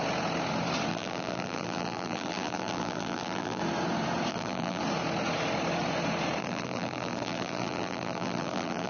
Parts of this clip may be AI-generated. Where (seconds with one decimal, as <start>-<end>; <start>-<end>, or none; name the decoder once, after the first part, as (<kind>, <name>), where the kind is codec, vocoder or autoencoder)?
0.9-3.6 (vocoder, BigVGAN v2); 4.3-4.8; 6.4-8.9